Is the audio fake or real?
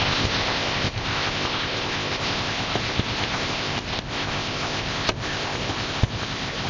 fake